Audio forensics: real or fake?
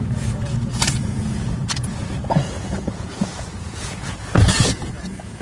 fake